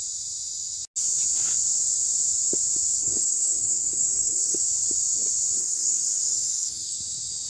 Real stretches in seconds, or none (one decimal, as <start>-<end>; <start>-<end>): 0.0-3.0; 4.6-5.6; 7.0-7.5